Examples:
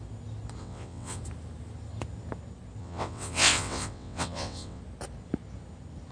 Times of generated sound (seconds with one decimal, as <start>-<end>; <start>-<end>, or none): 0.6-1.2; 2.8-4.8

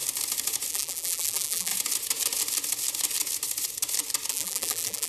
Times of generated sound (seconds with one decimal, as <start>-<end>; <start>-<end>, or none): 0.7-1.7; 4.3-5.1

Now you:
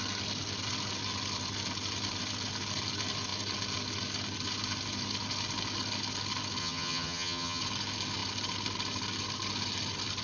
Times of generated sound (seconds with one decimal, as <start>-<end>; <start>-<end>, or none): 6.6-7.6

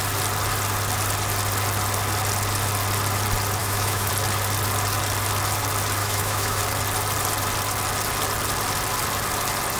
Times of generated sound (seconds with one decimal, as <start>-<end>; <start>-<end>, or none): 3.6-4.1; 6.0-6.6

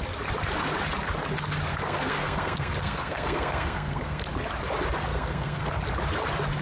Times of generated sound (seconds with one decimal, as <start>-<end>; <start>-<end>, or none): 1.7-4.2; 5.1-5.8

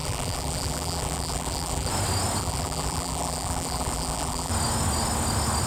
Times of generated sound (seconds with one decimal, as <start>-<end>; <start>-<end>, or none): 0.0-1.9; 2.4-4.5

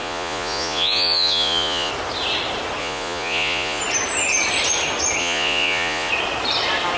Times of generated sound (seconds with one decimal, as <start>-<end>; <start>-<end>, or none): 0.0-1.9; 2.8-3.8; 5.2-6.1